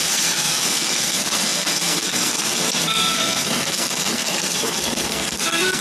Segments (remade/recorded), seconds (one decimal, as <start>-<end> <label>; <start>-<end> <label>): 0.0-5.8 remade